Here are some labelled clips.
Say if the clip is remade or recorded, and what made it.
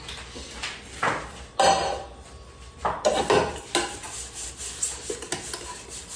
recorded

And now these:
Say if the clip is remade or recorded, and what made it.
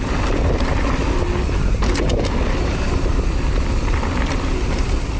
recorded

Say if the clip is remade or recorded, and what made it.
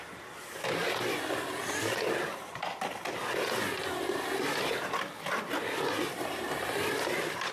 recorded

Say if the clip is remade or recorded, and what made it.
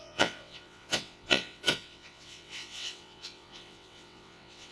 remade, vocoder, WaveNeXt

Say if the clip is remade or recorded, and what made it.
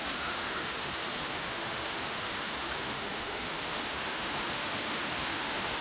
remade, autoencoder, DAC-VAE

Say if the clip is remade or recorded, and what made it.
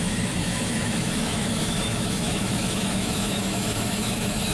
remade, autoencoder, DAC-VAE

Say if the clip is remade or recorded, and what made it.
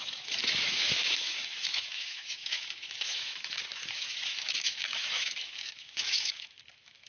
remade, autoencoder, DAC-VAE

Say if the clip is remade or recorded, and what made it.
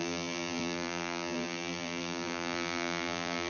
remade, vocoder, BigVGAN v2